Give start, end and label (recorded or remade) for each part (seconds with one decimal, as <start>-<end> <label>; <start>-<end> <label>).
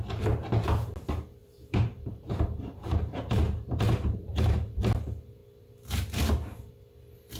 0.0-1.4 recorded; 1.4-4.8 remade; 4.8-7.4 recorded